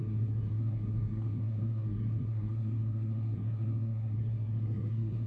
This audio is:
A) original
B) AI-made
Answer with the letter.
B